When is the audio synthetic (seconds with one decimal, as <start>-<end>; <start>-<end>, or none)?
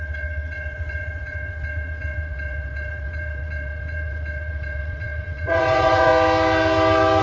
0.0-6.1